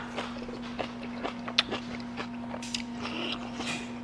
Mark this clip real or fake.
real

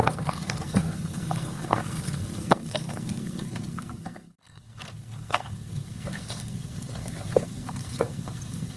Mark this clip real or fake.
fake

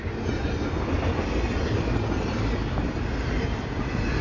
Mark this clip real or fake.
real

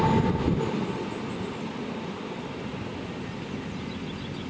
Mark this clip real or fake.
real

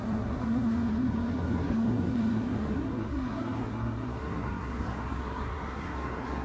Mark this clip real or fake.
fake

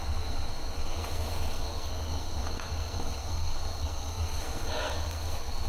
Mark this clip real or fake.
fake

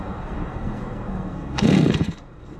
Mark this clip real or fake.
fake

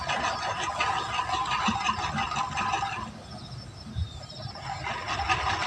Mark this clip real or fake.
real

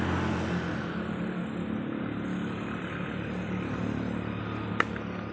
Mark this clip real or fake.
real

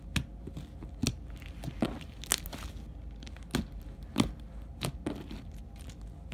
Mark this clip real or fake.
real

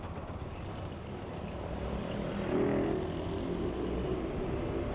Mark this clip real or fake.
real